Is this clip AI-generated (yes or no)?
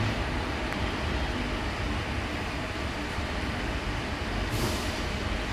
no